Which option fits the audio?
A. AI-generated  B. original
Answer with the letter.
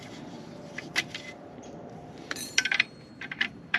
A